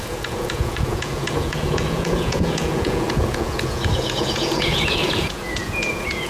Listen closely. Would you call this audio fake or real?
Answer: fake